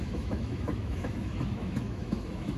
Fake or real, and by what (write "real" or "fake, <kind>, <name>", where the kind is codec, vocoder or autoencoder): fake, autoencoder, DAC-VAE